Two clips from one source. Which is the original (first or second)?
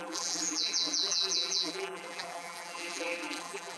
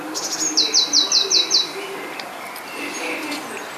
second